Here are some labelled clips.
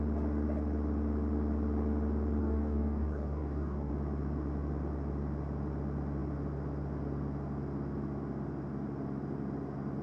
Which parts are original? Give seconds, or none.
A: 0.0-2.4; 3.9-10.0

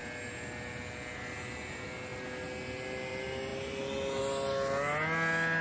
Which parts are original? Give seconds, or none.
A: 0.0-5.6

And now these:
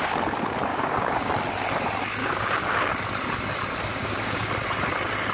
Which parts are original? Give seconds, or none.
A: 0.0-0.7; 1.3-2.2; 2.9-3.9; 4.5-5.3

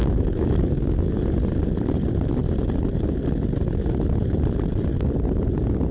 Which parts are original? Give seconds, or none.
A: 1.2-5.9

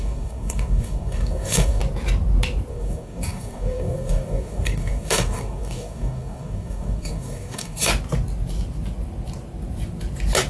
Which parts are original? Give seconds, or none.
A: 1.8-2.7; 7.9-10.5

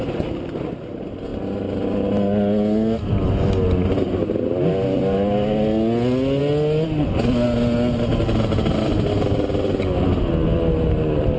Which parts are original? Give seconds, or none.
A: 0.0-11.4